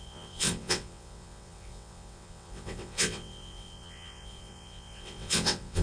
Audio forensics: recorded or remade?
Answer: remade